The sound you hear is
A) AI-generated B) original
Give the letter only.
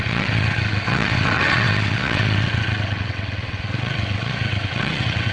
A